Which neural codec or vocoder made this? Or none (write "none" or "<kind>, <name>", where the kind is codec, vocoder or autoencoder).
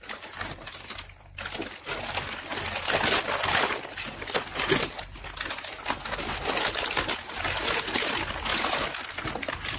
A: none